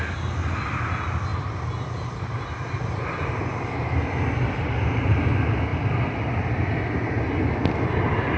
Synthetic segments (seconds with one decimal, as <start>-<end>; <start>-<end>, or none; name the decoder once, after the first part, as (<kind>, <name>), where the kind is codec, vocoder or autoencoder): none